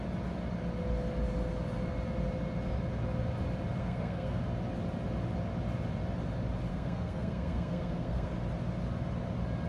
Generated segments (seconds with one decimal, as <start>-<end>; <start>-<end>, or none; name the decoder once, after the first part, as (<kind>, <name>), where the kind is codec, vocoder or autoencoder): 3.8-4.4 (codec, SNAC); 6.7-8.3